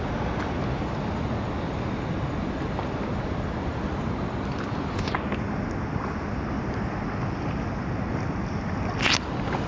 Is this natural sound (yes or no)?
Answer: yes